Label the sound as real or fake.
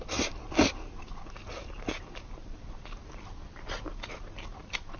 real